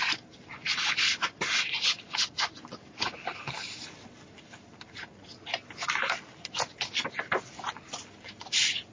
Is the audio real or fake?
real